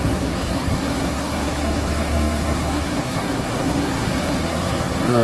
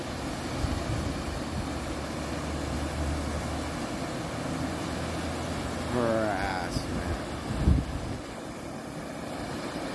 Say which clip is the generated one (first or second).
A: first